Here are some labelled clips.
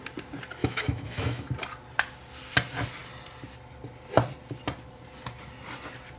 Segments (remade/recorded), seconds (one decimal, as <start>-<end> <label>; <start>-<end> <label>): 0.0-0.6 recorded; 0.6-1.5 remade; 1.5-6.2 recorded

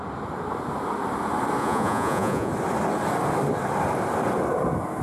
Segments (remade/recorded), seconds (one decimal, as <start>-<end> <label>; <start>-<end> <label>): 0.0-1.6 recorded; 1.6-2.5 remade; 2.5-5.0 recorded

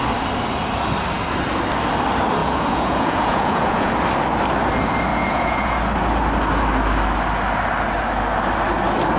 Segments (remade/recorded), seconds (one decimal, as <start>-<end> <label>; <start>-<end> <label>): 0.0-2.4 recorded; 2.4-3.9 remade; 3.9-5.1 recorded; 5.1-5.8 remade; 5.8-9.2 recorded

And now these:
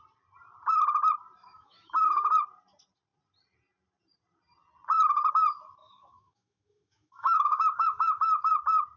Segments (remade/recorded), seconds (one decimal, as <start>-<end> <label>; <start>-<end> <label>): 0.0-1.4 recorded; 1.4-2.3 remade; 2.3-5.8 recorded; 5.8-8.5 remade; 8.5-9.0 recorded